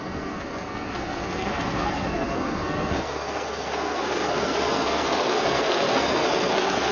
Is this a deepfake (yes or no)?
yes